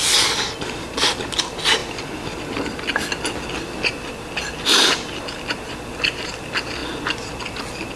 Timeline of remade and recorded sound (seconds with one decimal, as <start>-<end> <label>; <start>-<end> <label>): 0.0-8.0 recorded